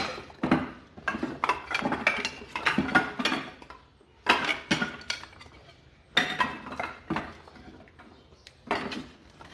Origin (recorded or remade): recorded